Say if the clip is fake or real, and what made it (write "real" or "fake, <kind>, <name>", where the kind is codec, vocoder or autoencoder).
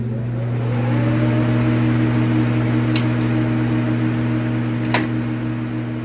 real